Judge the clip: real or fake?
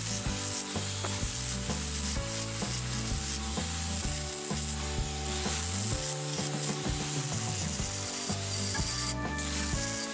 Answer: real